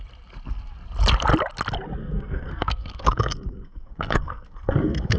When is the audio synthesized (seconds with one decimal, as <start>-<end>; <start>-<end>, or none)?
2.0-5.2